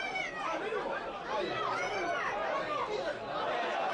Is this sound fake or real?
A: real